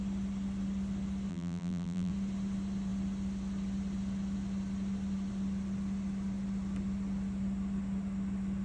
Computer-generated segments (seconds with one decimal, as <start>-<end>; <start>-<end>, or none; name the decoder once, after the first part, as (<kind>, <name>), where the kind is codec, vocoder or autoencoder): 1.3-2.1 (vocoder, BigVGAN v2)